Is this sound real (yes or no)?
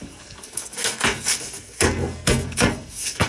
no